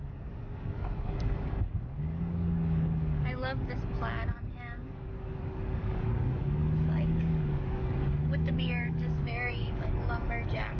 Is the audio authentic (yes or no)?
no